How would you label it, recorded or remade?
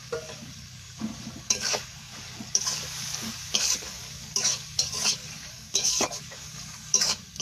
remade